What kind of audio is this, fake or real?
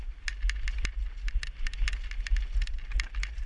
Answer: real